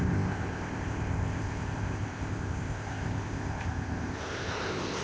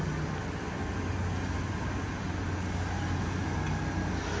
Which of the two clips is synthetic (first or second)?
first